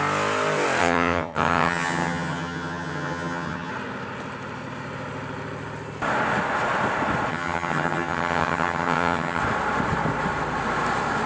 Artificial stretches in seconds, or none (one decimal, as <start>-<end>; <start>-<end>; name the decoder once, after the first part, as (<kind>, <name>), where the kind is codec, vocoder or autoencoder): 0.8-3.7 (vocoder, HiFi-GAN); 7.3-9.4